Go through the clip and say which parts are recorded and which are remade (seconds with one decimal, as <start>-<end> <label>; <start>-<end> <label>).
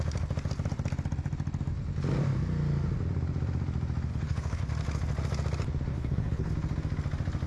0.0-4.1 recorded; 4.1-4.6 remade; 4.6-5.9 recorded; 5.9-6.5 remade; 6.5-7.5 recorded